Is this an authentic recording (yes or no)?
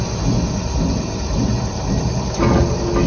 yes